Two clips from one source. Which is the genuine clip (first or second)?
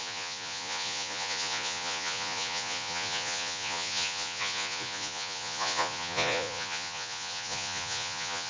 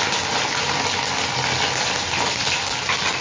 second